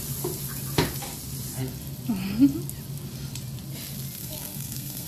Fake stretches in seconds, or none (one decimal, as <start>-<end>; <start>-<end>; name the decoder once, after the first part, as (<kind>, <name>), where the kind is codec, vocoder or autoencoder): 4.2-5.1 (codec, SNAC)

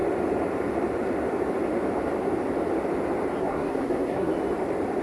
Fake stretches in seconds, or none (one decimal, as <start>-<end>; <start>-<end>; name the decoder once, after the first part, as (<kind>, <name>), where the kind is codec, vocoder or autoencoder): 3.4-4.3 (codec, SNAC)

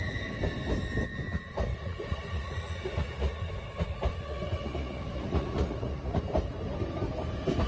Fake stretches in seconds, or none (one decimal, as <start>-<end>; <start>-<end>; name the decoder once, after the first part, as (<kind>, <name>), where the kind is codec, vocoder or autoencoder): 1.7-3.5 (vocoder, Vocos); 4.1-6.2

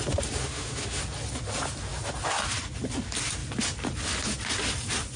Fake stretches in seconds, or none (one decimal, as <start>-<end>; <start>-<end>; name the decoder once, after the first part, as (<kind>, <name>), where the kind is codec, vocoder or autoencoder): 0.4-1.0 (autoencoder, DAC-VAE)

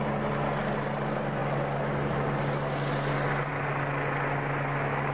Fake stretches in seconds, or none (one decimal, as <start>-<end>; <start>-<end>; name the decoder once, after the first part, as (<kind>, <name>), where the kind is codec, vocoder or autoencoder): none

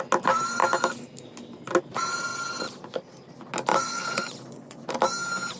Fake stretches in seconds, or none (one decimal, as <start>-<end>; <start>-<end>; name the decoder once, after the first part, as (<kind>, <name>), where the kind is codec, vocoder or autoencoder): 3.7-4.9 (vocoder, Vocos)

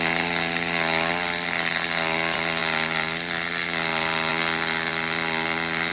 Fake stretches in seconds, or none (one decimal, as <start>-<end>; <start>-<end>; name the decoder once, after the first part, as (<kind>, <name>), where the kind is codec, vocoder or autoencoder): none

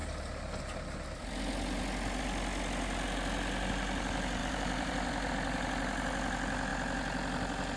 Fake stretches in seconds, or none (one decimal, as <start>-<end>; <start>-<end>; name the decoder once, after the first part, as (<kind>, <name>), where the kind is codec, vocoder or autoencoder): 4.4-5.3 (vocoder, BigVGAN v2)